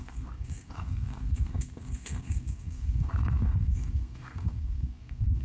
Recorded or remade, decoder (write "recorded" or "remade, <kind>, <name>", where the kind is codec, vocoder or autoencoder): remade, codec, SNAC